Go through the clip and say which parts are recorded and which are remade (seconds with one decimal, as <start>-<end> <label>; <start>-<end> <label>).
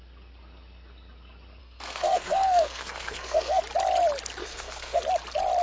0.0-1.6 recorded; 1.6-3.6 remade; 3.6-4.4 recorded; 4.4-5.0 remade; 5.0-5.6 recorded